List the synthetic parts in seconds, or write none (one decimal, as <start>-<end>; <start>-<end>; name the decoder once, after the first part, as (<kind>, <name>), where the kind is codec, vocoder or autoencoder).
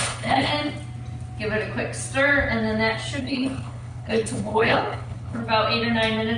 0.0-0.5 (codec, HILCodec); 3.2-5.4